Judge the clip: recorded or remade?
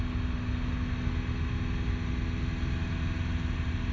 recorded